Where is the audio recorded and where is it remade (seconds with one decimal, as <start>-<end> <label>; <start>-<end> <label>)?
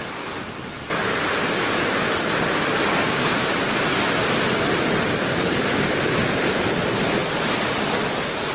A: 0.0-8.5 recorded